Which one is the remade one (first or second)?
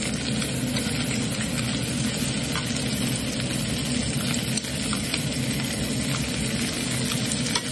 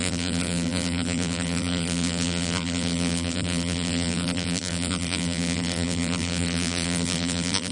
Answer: second